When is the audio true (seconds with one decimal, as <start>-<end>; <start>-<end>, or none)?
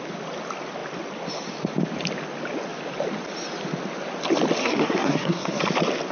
0.0-4.6; 5.6-6.1